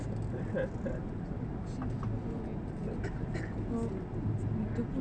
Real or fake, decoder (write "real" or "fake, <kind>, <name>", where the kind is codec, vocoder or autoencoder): real